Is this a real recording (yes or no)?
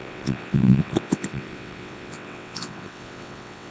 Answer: no